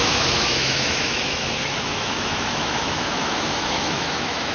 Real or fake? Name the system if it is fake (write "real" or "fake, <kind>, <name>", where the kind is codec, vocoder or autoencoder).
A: fake, autoencoder, DAC-VAE